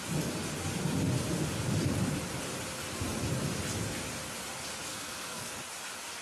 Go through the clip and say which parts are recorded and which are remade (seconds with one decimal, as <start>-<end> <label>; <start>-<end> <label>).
0.0-4.9 recorded; 4.9-5.5 remade; 5.5-6.2 recorded